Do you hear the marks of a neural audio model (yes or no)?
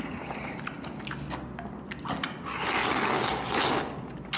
no